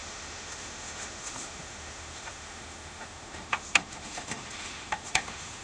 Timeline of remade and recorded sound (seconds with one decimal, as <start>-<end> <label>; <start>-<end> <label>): 0.0-5.6 remade